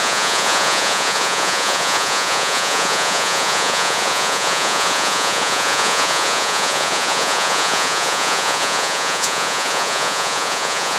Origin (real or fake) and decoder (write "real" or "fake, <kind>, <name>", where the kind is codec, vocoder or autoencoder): fake, vocoder, Vocos